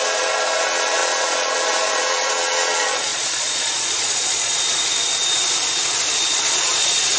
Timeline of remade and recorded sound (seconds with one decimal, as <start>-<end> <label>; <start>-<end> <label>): 0.0-4.5 remade; 4.5-6.3 recorded; 6.3-7.2 remade